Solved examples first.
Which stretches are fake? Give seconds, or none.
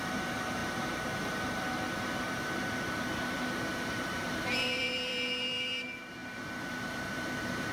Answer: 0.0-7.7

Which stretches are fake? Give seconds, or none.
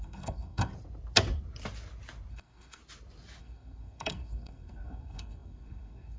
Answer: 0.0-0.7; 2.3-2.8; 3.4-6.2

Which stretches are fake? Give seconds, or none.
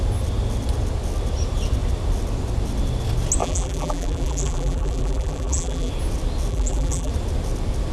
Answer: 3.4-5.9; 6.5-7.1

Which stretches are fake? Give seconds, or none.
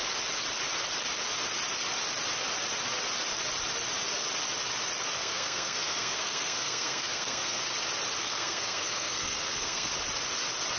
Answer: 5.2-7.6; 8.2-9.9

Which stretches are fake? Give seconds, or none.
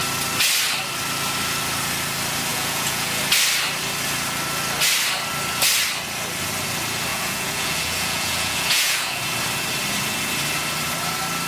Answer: 2.5-3.2; 7.1-9.2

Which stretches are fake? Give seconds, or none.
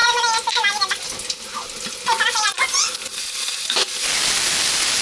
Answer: none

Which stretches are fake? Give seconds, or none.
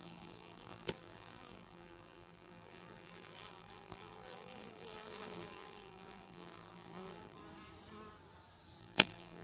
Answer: 0.0-7.4; 8.8-9.4